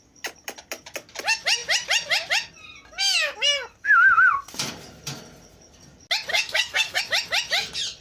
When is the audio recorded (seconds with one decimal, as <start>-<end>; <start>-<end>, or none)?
0.0-6.3; 7.0-8.0